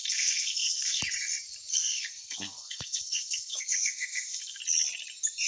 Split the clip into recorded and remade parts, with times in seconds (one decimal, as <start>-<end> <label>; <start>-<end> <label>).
0.0-1.0 remade; 1.0-1.7 recorded; 1.7-4.6 remade; 4.6-5.5 recorded